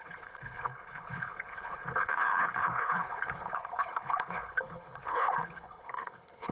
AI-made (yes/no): yes